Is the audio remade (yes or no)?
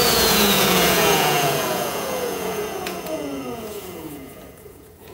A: yes